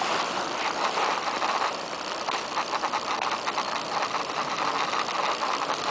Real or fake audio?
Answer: real